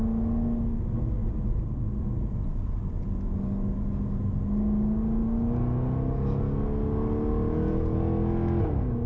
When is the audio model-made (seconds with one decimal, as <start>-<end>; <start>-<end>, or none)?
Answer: 1.2-3.0